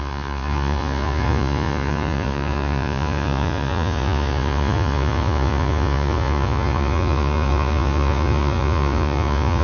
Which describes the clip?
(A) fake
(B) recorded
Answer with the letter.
A